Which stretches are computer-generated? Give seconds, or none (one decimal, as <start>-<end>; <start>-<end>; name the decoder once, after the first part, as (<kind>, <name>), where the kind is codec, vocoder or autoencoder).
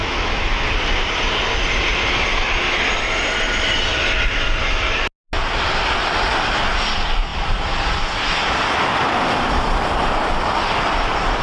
0.0-0.7 (autoencoder, DAC-VAE)